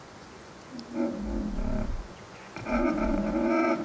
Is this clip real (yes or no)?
no